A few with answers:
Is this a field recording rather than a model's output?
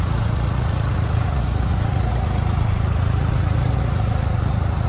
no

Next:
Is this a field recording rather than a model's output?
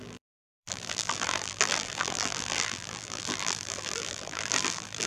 no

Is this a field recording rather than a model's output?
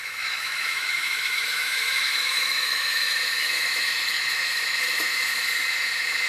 no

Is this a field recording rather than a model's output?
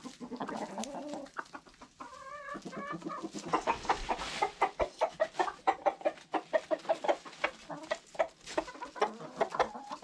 yes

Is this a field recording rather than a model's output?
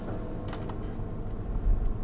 yes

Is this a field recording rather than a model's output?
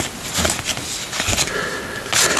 yes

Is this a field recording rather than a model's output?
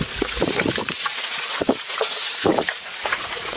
no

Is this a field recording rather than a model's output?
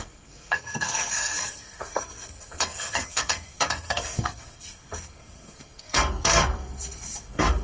no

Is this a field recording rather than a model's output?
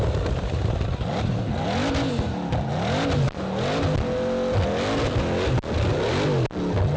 yes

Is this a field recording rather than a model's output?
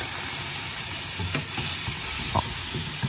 no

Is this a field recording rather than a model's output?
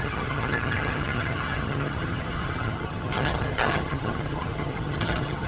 no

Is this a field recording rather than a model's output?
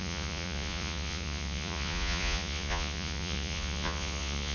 no